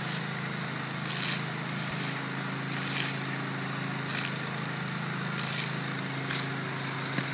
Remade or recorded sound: recorded